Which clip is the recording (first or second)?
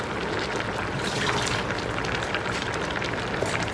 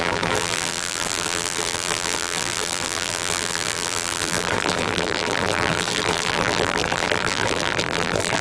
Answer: first